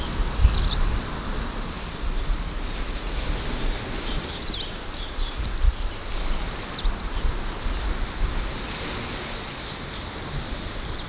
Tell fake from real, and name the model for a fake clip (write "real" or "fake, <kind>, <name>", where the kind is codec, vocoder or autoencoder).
real